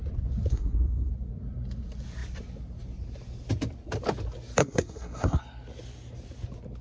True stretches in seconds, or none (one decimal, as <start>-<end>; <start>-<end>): 0.0-0.5; 1.1-4.6; 5.4-6.8